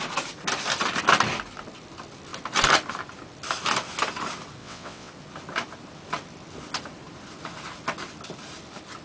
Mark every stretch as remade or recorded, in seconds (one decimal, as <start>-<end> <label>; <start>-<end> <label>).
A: 0.0-4.6 recorded; 4.6-5.1 remade; 5.1-9.0 recorded